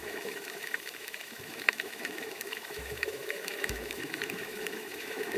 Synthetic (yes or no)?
yes